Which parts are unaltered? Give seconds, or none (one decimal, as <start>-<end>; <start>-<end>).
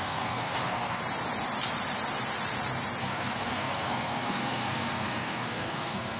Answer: 1.0-3.0